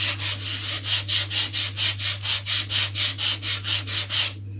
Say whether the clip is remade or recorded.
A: recorded